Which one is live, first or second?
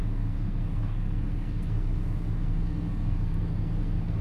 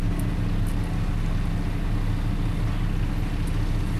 second